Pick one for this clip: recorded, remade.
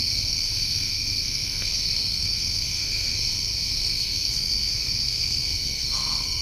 remade